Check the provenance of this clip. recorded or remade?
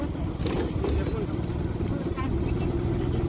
recorded